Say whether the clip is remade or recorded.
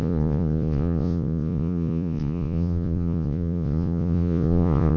remade